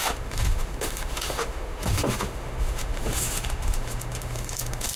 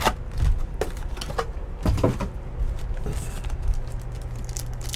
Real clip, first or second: second